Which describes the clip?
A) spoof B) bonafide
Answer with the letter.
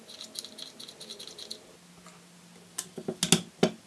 B